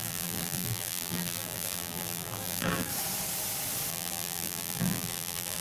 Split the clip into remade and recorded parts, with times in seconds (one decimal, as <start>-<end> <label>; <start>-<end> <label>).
0.0-2.9 remade; 2.9-3.9 recorded; 3.9-5.6 remade

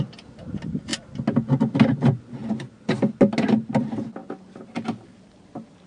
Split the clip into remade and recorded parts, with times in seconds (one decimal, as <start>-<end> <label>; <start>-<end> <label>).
0.0-5.9 recorded

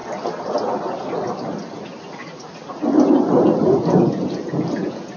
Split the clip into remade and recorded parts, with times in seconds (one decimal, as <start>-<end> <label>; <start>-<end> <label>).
0.0-2.2 recorded; 2.2-2.8 remade; 2.8-5.2 recorded

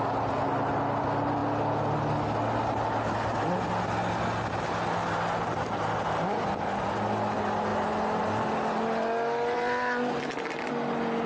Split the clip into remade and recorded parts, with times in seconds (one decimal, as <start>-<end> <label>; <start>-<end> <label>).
0.0-11.3 recorded

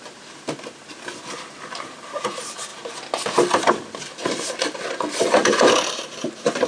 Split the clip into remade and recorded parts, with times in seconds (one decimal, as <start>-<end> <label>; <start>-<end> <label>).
0.0-2.7 remade; 2.7-3.7 recorded; 3.7-6.7 remade

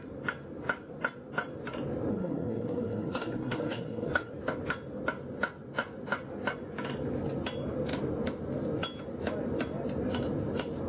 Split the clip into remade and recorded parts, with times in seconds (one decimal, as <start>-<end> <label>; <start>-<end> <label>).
0.0-2.1 recorded; 2.1-4.3 remade; 4.3-10.9 recorded